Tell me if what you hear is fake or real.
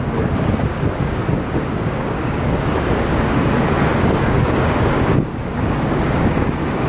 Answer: fake